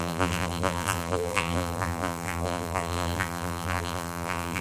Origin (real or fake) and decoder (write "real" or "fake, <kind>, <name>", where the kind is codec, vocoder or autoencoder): fake, vocoder, BigVGAN v2